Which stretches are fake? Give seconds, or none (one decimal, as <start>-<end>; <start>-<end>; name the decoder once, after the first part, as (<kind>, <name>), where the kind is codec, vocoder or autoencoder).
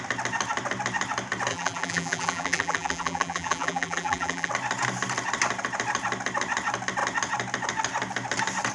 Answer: 1.5-4.5 (vocoder, BigVGAN v2)